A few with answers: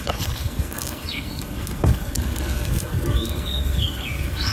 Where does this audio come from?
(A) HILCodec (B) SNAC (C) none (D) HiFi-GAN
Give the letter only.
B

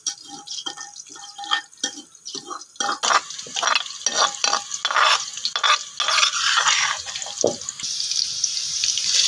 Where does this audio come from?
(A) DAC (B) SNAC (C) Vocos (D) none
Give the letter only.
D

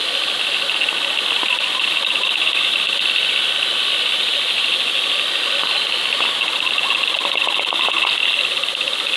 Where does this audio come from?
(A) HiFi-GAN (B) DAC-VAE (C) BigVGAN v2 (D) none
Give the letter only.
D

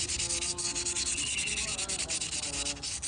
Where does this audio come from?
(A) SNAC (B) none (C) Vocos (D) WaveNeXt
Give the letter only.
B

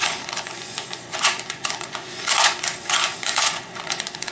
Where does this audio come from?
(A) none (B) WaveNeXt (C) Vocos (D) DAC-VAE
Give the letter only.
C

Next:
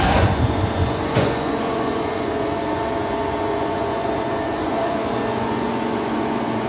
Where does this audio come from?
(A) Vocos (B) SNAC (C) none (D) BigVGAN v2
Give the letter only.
A